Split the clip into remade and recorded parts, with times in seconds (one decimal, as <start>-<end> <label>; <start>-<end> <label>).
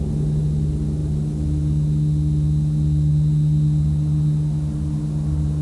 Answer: 0.0-5.6 recorded